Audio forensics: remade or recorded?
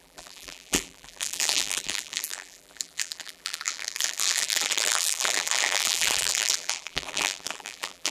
remade